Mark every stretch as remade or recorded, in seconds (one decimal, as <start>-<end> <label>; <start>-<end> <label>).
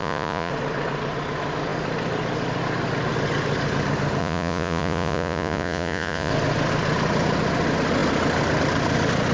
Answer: 0.0-0.5 remade; 0.5-4.2 recorded; 4.2-6.3 remade; 6.3-9.3 recorded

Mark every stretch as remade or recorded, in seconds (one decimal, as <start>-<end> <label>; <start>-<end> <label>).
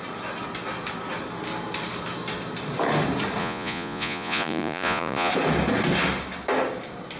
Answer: 0.0-3.4 recorded; 3.4-5.3 remade; 5.3-7.2 recorded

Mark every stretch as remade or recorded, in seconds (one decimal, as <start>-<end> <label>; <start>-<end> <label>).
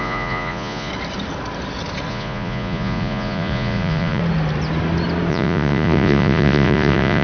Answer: 0.0-0.9 remade; 0.9-2.1 recorded; 2.1-4.2 remade; 4.2-5.3 recorded; 5.3-7.2 remade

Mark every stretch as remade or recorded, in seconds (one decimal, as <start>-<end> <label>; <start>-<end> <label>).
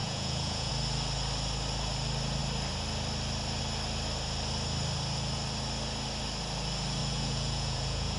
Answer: 0.0-0.7 remade; 0.7-7.0 recorded; 7.0-8.2 remade